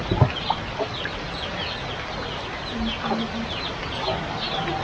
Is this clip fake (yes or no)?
no